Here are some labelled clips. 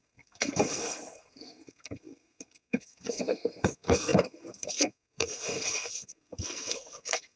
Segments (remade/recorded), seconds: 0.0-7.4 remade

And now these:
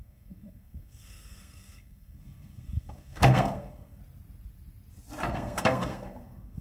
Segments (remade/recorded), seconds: 0.0-4.0 remade; 4.0-5.3 recorded; 5.3-6.6 remade